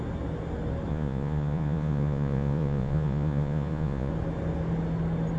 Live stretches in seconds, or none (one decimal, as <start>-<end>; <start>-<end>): 0.0-0.9; 4.1-5.4